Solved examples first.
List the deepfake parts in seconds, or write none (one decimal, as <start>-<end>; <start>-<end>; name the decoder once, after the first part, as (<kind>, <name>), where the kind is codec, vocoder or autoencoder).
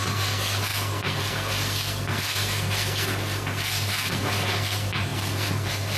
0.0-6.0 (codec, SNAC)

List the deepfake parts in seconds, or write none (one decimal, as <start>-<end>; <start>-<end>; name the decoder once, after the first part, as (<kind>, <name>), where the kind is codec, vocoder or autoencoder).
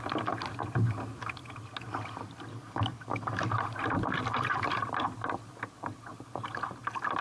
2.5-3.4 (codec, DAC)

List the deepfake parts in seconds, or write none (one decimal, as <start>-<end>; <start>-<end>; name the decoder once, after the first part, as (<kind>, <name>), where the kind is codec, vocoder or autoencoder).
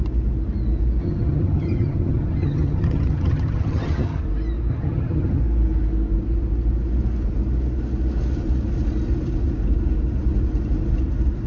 1.0-4.2 (vocoder, HiFi-GAN); 4.7-5.4